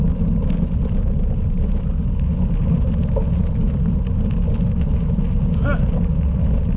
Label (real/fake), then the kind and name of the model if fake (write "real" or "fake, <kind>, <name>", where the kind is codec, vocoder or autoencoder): real